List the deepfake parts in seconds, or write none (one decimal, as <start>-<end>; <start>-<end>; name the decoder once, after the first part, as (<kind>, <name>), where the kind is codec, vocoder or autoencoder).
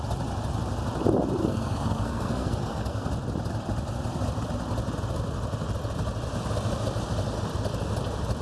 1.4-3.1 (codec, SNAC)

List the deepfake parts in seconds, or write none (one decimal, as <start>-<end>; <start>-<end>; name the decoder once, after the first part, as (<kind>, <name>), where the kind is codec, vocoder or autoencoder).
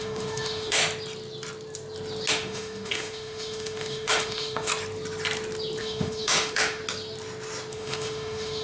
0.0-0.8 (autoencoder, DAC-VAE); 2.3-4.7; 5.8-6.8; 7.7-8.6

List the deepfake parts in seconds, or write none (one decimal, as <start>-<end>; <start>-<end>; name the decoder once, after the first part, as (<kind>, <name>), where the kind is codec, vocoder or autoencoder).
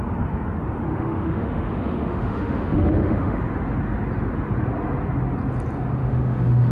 0.9-3.4 (autoencoder, DAC-VAE); 6.0-6.7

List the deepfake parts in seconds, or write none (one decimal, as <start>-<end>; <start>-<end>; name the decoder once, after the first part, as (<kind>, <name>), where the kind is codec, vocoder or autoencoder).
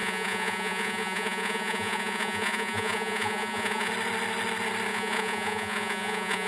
0.0-3.9 (vocoder, Vocos); 4.9-6.5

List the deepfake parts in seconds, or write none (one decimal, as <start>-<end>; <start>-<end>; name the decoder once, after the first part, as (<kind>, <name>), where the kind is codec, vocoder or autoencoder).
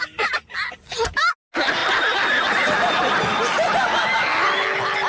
none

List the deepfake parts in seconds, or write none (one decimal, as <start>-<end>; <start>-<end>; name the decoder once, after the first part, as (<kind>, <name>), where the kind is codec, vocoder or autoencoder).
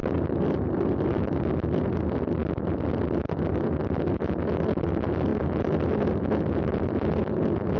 0.0-0.5 (vocoder, BigVGAN v2); 5.3-6.2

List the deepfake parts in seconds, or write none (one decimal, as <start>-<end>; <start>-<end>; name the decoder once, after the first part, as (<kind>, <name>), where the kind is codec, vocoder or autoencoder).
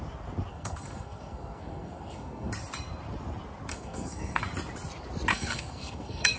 0.5-2.5 (codec, SNAC); 3.7-4.4; 5.3-6.4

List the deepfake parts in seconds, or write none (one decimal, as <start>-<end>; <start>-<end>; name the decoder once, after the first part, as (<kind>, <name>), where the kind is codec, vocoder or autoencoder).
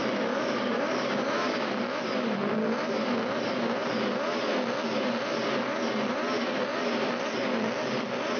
0.0-1.5 (vocoder, BigVGAN v2)